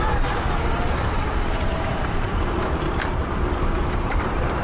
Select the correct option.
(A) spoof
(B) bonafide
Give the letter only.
A